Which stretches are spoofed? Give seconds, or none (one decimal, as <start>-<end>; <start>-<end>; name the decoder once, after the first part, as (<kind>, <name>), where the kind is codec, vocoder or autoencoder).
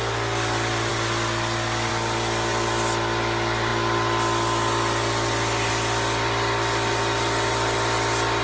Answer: none